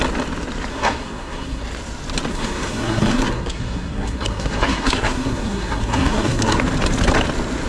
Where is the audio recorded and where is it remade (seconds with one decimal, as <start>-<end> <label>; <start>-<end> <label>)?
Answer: 0.0-0.7 recorded; 0.7-1.6 remade; 1.6-2.3 recorded; 2.3-6.6 remade; 6.6-7.7 recorded